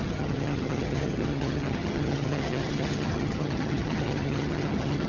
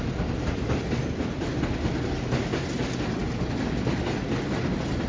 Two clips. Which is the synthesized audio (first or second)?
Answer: first